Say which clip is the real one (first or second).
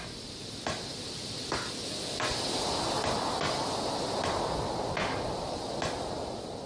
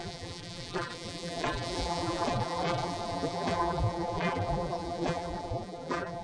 first